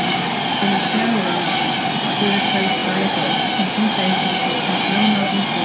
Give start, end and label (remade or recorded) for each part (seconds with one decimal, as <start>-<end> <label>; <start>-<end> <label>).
0.0-5.6 recorded